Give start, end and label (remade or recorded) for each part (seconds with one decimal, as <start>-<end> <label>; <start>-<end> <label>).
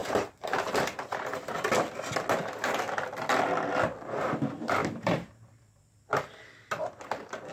0.0-1.5 remade; 1.5-4.8 recorded; 4.8-6.1 remade; 6.1-7.5 recorded